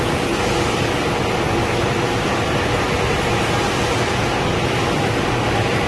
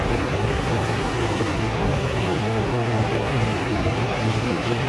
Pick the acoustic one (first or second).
first